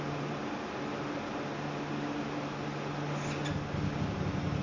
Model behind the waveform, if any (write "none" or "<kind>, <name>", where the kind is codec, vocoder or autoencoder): none